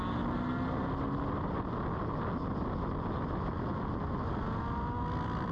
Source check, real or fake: real